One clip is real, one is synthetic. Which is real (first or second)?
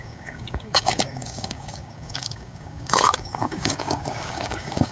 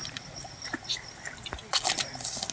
second